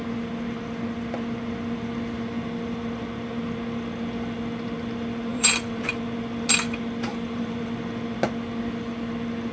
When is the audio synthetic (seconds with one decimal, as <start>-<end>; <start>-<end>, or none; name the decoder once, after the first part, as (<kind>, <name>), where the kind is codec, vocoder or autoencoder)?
5.3-5.9 (vocoder, BigVGAN v2); 7.1-7.7